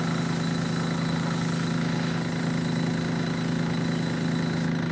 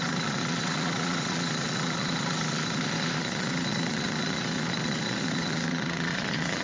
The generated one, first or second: second